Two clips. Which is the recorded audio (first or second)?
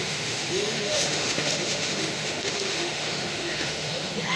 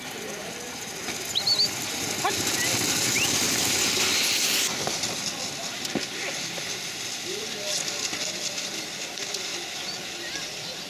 second